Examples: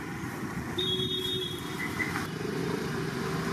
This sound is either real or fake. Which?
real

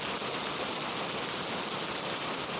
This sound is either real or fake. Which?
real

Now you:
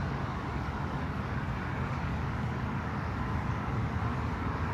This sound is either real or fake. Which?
fake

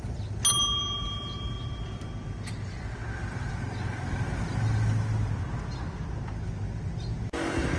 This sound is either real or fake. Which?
real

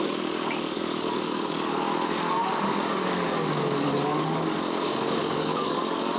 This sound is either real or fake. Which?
fake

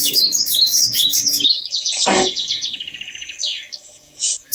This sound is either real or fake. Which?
fake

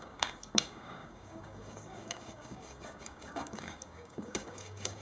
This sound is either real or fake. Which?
fake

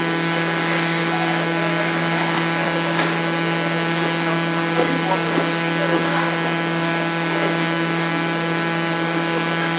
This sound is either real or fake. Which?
fake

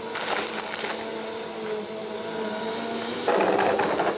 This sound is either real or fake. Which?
real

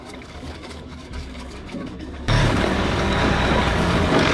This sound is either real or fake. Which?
fake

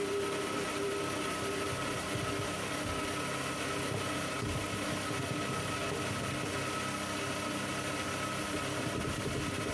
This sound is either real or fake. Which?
real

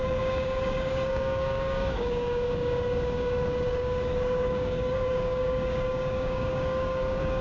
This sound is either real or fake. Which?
fake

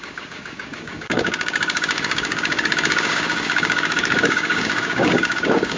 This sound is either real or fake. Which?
fake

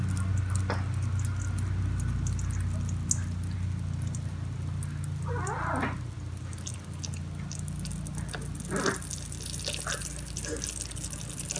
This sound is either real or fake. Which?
real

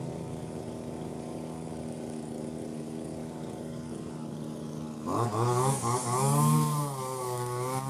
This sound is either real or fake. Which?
fake